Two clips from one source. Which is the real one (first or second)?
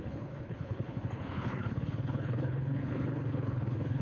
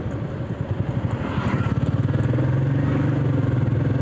second